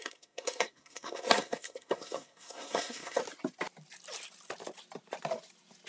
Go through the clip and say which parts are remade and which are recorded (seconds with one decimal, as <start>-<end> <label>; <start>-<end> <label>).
0.0-3.2 remade; 3.2-5.9 recorded